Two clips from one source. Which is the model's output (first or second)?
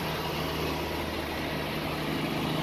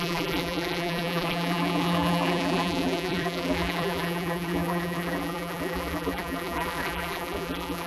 second